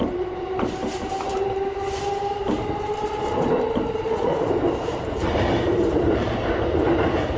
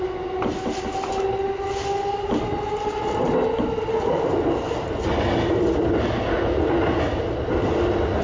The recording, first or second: second